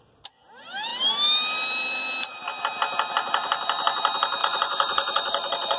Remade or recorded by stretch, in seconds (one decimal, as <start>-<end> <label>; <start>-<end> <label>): 0.0-4.4 recorded; 4.4-5.8 remade